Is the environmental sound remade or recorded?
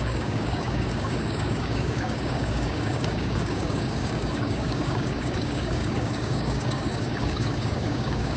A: remade